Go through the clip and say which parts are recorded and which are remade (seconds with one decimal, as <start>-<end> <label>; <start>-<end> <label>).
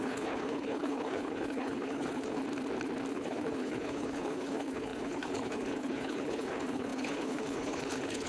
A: 0.0-2.4 remade; 2.4-3.1 recorded; 3.1-8.3 remade